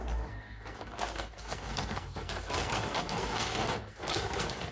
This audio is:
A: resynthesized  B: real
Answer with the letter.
A